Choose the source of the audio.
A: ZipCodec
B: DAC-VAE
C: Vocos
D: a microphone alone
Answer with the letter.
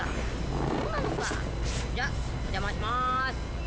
D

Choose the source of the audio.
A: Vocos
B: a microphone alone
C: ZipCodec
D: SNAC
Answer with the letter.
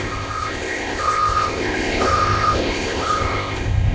C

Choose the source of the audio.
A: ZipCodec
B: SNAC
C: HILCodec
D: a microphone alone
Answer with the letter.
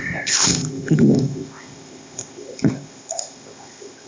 A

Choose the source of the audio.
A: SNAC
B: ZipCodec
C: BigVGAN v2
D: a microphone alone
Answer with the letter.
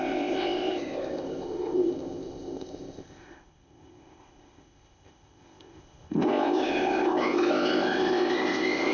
B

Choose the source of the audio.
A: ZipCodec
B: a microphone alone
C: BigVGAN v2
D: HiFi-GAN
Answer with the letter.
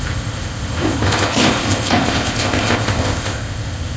A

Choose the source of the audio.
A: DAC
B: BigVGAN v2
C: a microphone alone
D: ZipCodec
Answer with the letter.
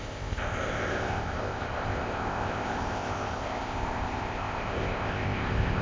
D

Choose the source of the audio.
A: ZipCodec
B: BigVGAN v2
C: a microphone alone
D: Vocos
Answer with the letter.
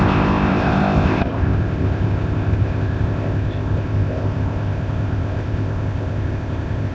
A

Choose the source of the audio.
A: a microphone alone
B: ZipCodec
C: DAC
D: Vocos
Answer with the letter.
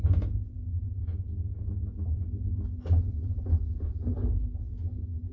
A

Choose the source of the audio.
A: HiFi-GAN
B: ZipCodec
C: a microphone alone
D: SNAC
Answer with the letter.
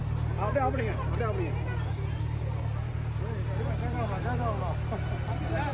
C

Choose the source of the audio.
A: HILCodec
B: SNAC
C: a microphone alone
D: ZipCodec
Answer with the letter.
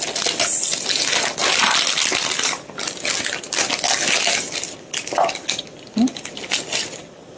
C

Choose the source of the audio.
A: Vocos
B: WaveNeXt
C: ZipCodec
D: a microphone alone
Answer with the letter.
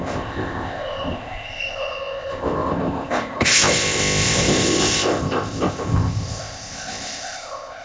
C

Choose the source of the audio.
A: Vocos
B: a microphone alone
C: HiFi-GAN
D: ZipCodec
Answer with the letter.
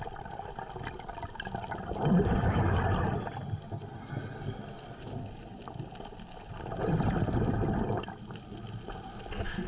B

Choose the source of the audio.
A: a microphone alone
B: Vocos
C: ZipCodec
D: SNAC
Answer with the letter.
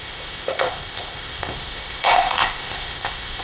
C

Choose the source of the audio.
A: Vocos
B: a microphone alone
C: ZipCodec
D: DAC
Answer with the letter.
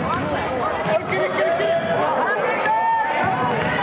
B